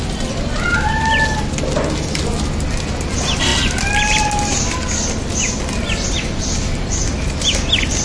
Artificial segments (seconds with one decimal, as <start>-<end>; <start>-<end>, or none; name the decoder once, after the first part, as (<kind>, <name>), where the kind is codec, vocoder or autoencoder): none